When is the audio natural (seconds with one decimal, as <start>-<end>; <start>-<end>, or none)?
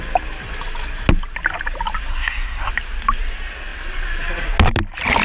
0.0-2.1; 2.7-5.2